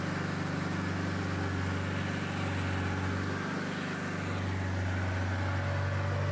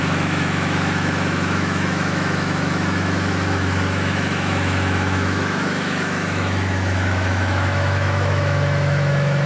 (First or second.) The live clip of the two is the first